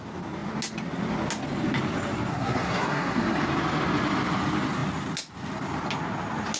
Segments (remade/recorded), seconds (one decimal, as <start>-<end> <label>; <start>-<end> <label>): 0.0-2.3 recorded; 2.3-3.4 remade; 3.4-6.6 recorded